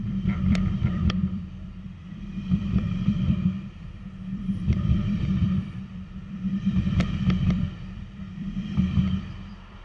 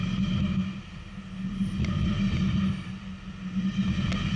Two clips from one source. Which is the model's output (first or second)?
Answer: first